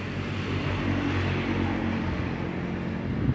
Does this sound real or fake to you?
real